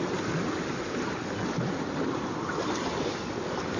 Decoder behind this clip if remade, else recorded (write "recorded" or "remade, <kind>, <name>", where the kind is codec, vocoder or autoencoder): recorded